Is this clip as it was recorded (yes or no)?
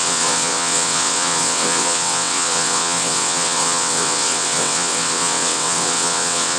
no